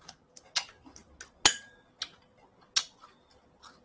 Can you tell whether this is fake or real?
real